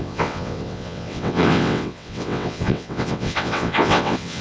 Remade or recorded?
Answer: remade